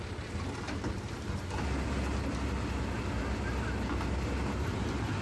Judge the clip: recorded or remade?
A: recorded